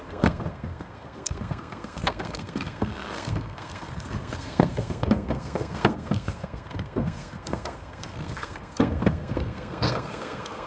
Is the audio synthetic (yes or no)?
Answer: yes